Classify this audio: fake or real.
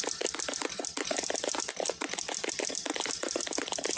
real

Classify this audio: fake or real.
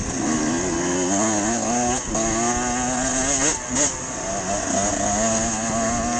real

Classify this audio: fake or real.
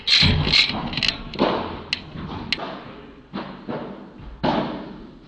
real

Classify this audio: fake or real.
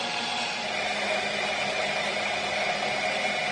real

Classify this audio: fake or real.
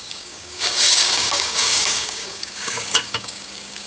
fake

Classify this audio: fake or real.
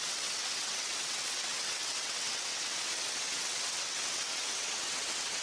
fake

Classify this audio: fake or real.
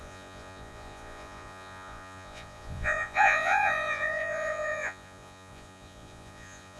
fake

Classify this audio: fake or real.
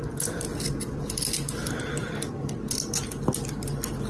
fake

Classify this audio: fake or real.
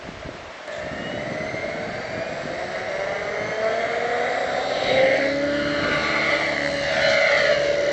real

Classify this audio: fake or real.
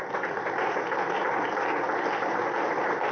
real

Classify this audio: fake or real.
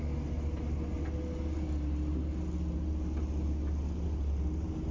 real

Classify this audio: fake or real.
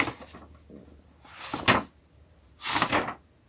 real